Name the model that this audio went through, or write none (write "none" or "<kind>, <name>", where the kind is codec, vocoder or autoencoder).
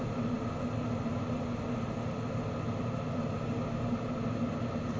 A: none